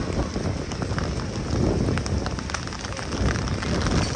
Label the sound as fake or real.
real